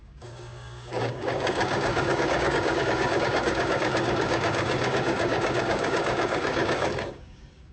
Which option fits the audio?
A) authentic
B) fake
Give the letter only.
B